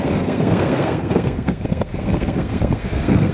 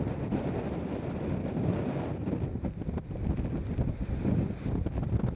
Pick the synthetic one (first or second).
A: first